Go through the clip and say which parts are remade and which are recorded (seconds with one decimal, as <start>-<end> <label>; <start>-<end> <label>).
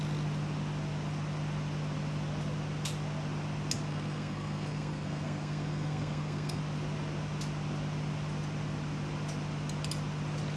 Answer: 0.0-3.9 recorded; 3.9-6.6 remade; 6.6-10.6 recorded